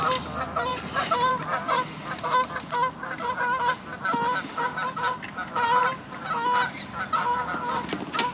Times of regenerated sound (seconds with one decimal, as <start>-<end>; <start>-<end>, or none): none